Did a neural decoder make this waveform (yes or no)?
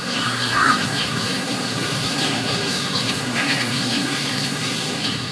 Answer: yes